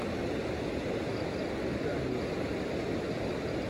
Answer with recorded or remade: recorded